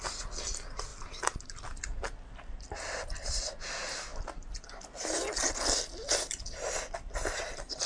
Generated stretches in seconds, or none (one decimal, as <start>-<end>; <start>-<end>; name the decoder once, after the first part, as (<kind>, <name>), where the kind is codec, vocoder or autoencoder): none